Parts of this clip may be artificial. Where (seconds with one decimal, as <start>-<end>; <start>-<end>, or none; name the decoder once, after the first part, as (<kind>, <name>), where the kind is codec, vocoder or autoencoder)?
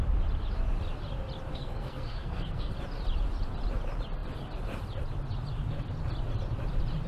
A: 1.5-2.7 (codec, SNAC)